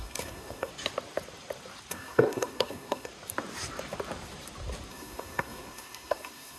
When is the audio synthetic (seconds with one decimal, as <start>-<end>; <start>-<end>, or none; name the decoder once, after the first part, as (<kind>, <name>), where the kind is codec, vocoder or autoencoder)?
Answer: 0.0-0.7 (codec, SNAC); 1.9-3.1; 4.9-6.6